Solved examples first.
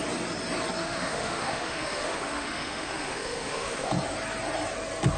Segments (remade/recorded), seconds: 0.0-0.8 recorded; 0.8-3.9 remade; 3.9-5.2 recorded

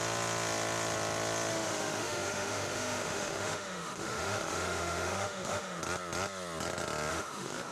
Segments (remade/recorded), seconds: 0.0-1.5 recorded; 1.5-5.8 remade; 5.8-7.1 recorded; 7.1-7.7 remade

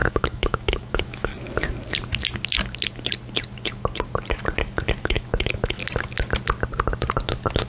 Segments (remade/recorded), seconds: 0.0-1.3 remade; 1.3-5.0 recorded; 5.0-5.8 remade; 5.8-7.7 recorded

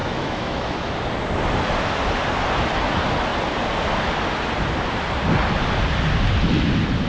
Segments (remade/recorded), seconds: 0.0-0.9 remade; 0.9-7.1 recorded

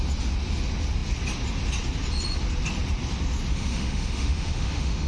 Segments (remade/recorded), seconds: 0.0-3.5 recorded; 3.5-5.1 remade

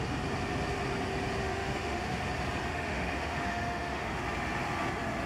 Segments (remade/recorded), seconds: 0.0-1.4 recorded; 1.4-2.2 remade; 2.2-2.6 recorded; 2.6-4.2 remade; 4.2-5.3 recorded